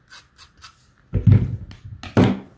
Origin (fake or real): real